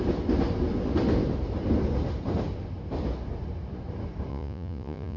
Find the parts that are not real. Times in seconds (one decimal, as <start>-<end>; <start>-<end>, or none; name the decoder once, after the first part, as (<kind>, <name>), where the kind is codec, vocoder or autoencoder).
4.3-5.2 (vocoder, Vocos)